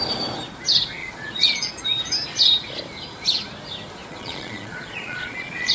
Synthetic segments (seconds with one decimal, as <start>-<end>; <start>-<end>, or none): 1.0-1.7; 4.0-5.7